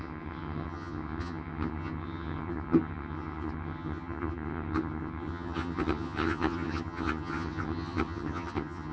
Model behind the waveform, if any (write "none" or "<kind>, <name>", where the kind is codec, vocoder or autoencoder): vocoder, HiFi-GAN